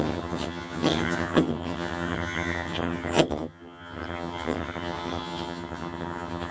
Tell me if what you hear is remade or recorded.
remade